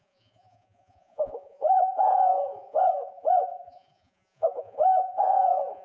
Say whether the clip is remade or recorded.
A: remade